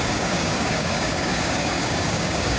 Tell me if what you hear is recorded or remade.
remade